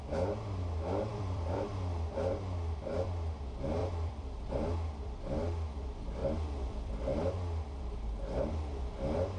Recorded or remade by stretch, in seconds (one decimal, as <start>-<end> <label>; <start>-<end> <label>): 0.0-1.1 recorded; 1.1-1.7 remade; 1.7-3.8 recorded; 3.8-4.5 remade; 4.5-6.2 recorded; 6.2-7.0 remade; 7.0-9.4 recorded